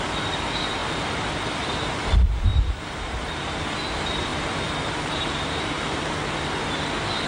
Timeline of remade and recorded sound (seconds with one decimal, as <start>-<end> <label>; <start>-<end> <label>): 0.0-0.8 recorded; 0.8-1.5 remade; 1.5-2.5 recorded; 2.5-3.6 remade; 3.6-4.3 recorded; 4.3-6.2 remade; 6.2-7.3 recorded